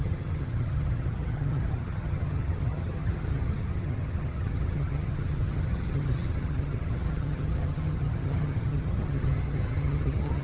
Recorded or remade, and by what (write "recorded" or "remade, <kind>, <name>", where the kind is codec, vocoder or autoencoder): remade, vocoder, HiFi-GAN